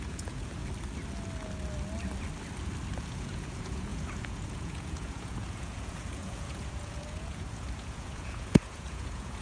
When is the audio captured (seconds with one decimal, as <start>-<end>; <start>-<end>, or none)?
0.6-3.1